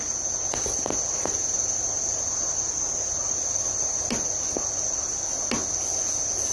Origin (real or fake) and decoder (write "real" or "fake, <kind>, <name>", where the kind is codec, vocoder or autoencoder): real